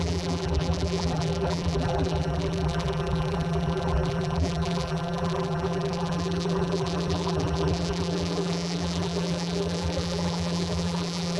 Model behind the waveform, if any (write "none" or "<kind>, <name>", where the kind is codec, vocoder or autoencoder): vocoder, BigVGAN v2